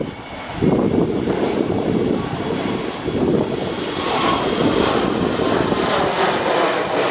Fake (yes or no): no